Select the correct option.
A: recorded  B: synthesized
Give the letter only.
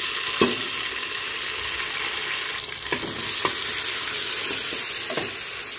A